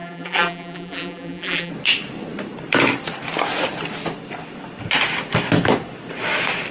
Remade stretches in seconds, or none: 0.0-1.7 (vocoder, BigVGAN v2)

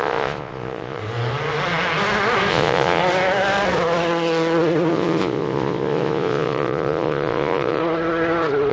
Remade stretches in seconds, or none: 0.0-1.0 (vocoder, Vocos); 2.5-3.0; 4.9-7.8

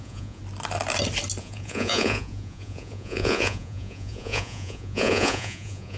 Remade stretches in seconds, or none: 0.0-0.4 (vocoder, Vocos); 1.4-6.0

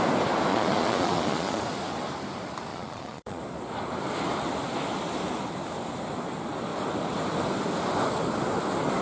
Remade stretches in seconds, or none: 0.5-1.6 (vocoder, Vocos); 2.7-3.4

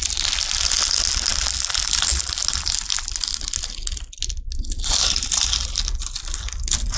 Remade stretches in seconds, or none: none

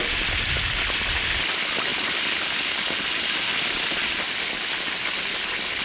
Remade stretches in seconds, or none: none

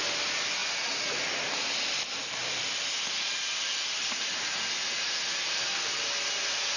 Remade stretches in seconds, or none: none

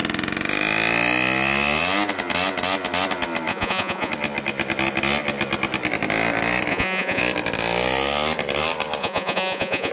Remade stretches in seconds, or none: 3.5-4.1 (vocoder, Vocos); 6.7-7.2; 9.0-9.9